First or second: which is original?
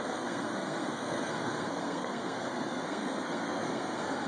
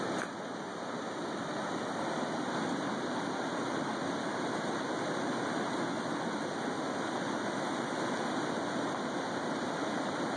second